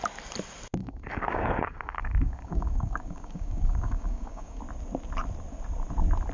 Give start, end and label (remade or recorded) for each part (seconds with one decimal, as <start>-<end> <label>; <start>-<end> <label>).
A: 0.0-0.8 recorded; 0.8-4.6 remade; 4.6-6.3 recorded